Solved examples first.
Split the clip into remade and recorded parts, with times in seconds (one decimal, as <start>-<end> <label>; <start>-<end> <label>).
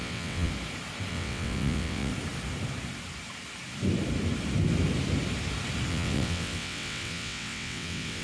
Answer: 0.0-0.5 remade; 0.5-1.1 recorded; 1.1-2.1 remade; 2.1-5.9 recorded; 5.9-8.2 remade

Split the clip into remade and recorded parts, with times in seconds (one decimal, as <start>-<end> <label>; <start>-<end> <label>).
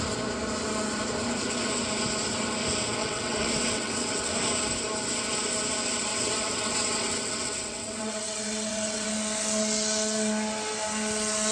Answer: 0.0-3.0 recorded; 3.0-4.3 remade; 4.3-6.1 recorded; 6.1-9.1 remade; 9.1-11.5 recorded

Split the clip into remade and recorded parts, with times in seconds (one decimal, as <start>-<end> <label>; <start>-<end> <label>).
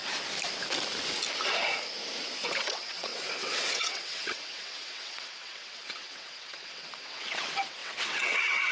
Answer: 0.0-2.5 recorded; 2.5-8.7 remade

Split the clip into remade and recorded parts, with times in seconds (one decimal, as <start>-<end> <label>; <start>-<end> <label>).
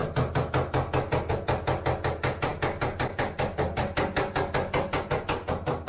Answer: 0.0-5.9 recorded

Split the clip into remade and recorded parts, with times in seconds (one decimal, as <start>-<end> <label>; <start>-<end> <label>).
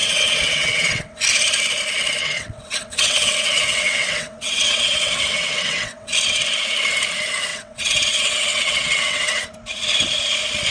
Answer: 0.0-1.2 remade; 1.2-2.2 recorded; 2.2-6.1 remade; 6.1-7.5 recorded; 7.5-9.4 remade; 9.4-10.7 recorded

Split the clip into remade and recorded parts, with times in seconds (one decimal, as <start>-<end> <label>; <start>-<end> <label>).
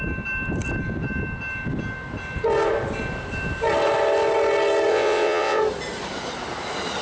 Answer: 0.0-4.9 recorded; 4.9-5.6 remade; 5.6-7.0 recorded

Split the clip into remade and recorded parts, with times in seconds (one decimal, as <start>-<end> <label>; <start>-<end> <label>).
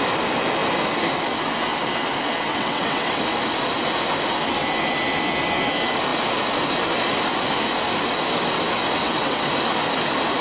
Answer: 0.0-2.5 recorded; 2.5-3.2 remade; 3.2-9.0 recorded; 9.0-9.5 remade; 9.5-10.4 recorded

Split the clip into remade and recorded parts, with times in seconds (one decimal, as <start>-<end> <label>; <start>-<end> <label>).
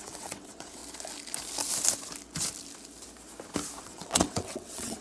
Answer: 0.0-0.8 remade; 0.8-3.8 recorded; 3.8-5.0 remade